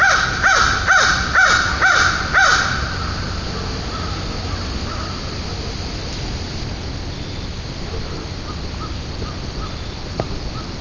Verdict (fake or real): real